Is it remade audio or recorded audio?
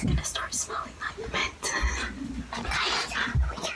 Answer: recorded